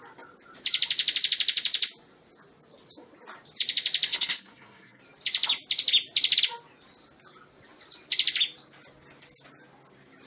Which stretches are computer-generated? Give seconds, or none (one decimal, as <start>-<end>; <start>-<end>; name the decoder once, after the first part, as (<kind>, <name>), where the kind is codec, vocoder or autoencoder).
4.1-5.0 (codec, SNAC)